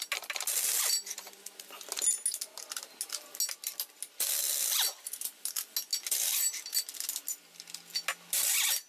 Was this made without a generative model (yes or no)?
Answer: yes